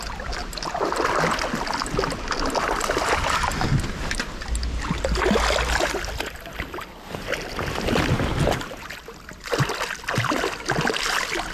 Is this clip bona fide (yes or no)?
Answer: yes